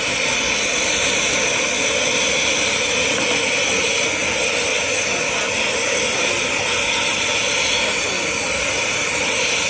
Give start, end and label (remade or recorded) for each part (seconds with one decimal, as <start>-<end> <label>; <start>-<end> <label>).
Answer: 0.0-9.7 recorded